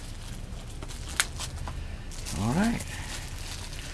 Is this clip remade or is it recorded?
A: recorded